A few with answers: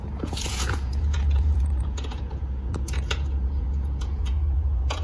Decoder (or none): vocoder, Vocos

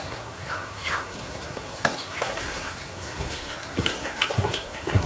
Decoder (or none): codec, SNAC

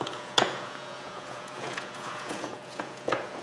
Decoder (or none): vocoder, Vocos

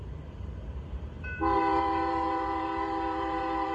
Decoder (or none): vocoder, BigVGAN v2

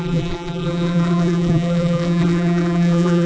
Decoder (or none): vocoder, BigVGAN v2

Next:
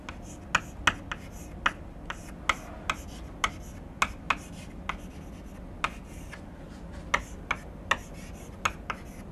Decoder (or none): none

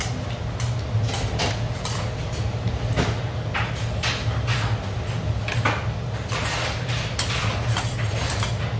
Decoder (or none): none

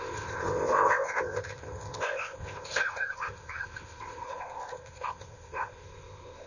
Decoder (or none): codec, ZipCodec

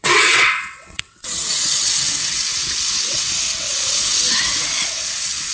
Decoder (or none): vocoder, WaveNeXt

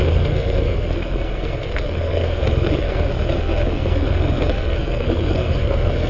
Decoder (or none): codec, SNAC